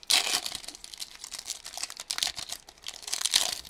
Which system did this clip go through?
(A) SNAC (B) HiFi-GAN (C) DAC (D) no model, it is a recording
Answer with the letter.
D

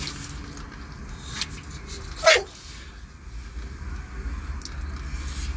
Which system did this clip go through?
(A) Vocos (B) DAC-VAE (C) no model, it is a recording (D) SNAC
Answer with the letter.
C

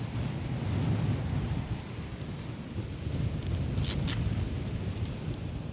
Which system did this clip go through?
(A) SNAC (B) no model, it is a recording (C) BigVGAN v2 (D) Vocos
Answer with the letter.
B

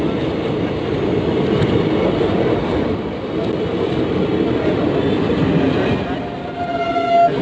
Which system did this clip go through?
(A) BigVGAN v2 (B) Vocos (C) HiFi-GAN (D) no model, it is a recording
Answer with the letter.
D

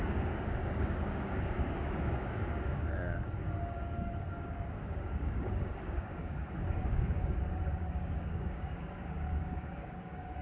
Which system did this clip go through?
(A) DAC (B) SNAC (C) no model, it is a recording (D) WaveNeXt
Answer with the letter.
A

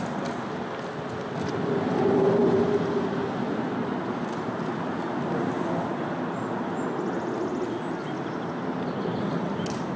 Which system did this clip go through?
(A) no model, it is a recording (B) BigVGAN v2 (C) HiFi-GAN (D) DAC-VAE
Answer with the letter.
A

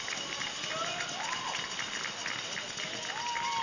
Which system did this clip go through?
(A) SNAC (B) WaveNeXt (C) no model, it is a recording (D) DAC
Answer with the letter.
C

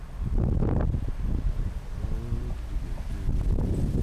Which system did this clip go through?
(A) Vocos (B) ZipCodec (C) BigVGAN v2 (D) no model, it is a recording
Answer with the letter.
D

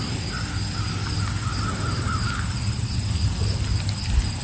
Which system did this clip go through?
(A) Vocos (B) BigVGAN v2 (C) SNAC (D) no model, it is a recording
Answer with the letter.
D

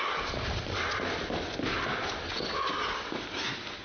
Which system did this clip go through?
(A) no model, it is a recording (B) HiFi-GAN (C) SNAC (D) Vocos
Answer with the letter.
A